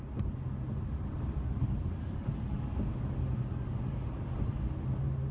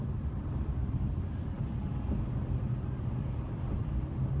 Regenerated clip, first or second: second